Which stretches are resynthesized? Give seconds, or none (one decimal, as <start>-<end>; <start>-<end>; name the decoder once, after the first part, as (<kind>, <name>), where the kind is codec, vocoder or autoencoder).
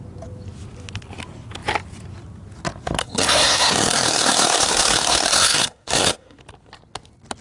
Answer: 3.0-6.4 (codec, SNAC)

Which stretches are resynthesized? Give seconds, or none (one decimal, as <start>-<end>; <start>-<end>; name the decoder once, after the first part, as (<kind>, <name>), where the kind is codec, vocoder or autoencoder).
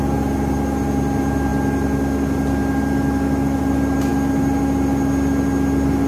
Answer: none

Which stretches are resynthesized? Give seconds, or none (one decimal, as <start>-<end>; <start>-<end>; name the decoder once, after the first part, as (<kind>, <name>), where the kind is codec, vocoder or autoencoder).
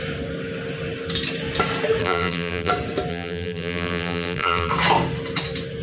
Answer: 2.0-2.7 (vocoder, BigVGAN v2); 3.1-4.7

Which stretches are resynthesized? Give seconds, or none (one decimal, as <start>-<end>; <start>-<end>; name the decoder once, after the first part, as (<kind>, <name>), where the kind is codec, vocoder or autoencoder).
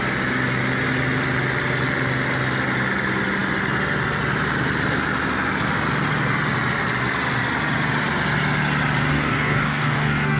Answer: 9.1-10.4 (codec, DAC)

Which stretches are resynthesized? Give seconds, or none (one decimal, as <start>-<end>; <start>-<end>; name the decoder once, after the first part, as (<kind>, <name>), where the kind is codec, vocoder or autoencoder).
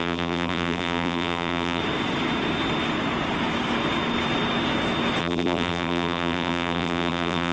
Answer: 0.0-1.8 (vocoder, BigVGAN v2); 5.2-7.5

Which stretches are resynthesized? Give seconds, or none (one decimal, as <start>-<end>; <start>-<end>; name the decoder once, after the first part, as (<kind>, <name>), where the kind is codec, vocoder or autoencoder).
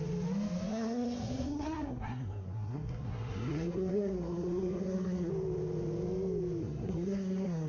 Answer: 0.7-5.3 (codec, SNAC); 6.6-7.7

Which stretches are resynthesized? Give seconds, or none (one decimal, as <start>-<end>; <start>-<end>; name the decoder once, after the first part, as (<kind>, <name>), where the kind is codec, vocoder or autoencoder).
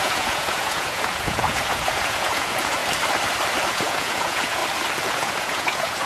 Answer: 0.0-2.8 (vocoder, Vocos); 3.7-4.6; 5.1-6.1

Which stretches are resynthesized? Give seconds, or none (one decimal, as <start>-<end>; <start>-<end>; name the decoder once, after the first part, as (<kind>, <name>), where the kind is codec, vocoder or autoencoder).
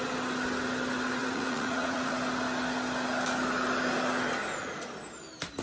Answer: 1.2-2.1 (vocoder, Vocos); 4.4-4.9